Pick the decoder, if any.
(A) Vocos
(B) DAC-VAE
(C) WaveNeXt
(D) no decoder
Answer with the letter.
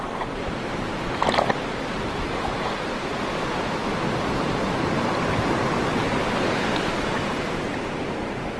D